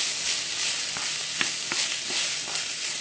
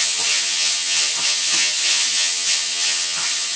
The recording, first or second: first